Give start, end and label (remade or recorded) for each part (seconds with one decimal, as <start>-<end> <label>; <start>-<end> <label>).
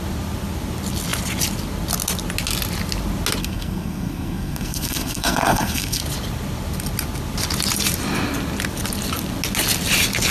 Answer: 0.0-3.4 recorded; 3.4-6.0 remade; 6.0-10.3 recorded